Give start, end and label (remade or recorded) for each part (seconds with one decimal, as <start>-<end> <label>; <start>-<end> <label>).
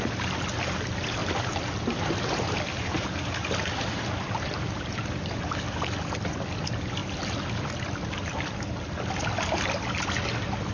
0.0-1.2 recorded; 1.2-5.8 remade; 5.8-7.0 recorded; 7.0-8.5 remade; 8.5-10.7 recorded